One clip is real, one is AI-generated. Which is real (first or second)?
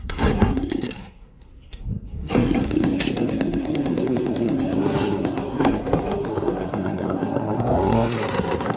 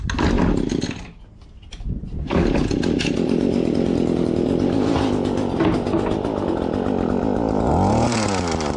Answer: second